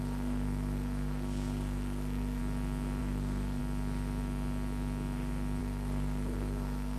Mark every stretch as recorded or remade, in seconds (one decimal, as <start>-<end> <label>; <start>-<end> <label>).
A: 0.0-2.4 remade; 2.4-3.0 recorded; 3.0-3.6 remade; 3.6-5.6 recorded; 5.6-7.0 remade